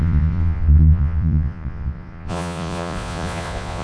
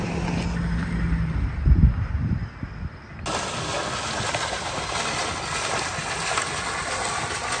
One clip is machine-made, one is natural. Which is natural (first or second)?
second